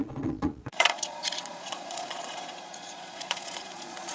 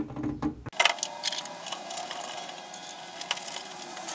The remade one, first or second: first